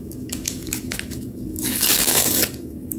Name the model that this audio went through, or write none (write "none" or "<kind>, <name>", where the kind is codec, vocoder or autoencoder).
codec, DAC